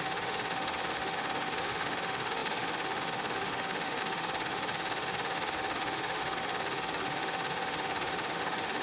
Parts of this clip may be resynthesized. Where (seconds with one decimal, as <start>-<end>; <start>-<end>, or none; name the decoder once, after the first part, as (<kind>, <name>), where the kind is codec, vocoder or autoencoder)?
0.0-8.8 (autoencoder, DAC-VAE)